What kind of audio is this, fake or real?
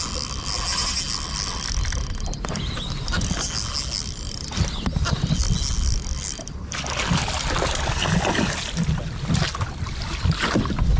real